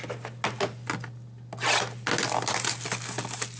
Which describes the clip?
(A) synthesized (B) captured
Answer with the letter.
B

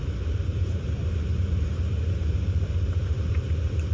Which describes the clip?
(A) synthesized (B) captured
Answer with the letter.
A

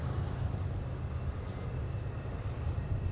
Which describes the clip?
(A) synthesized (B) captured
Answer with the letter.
A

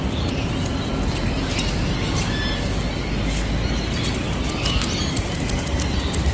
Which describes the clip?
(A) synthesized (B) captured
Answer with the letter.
B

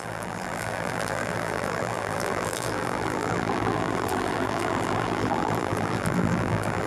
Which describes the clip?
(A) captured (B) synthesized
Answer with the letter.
B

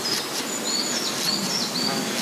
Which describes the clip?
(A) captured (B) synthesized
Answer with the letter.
A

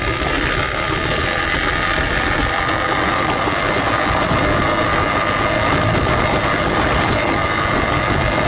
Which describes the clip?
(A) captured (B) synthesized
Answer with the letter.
A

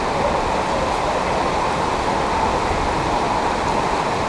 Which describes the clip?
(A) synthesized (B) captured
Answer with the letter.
B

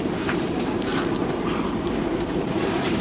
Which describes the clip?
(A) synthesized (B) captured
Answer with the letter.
A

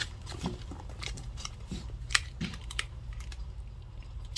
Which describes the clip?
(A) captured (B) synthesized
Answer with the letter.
B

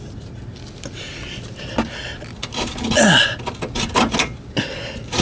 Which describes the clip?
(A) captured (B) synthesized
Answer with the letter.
A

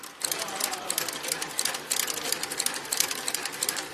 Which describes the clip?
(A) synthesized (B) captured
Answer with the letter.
A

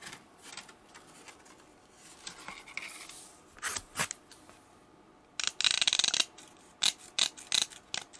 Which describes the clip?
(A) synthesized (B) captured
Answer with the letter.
B